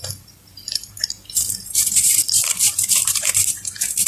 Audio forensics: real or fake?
fake